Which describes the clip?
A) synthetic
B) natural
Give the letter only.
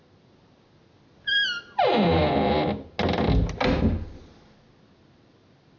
B